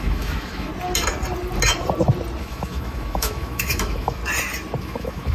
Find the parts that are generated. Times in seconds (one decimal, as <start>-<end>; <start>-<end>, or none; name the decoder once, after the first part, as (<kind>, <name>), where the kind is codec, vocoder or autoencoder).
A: 0.0-0.7 (autoencoder, DAC-VAE); 2.4-4.2; 4.8-5.3